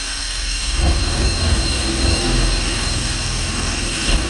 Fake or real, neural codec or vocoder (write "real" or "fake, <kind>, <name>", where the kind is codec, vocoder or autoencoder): fake, codec, DAC